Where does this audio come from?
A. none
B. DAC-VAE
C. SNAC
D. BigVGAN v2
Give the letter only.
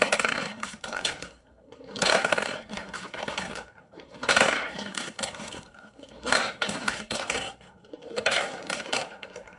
C